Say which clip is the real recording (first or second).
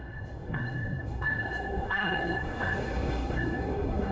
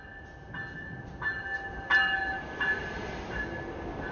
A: second